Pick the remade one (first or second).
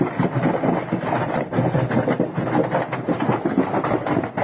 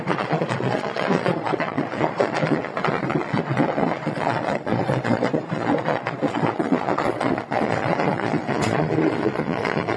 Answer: second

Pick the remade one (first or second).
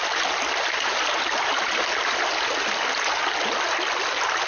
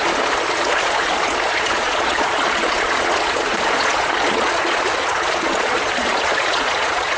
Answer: second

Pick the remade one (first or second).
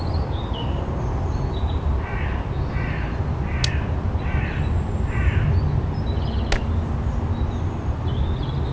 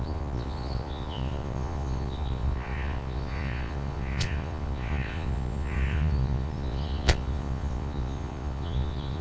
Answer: second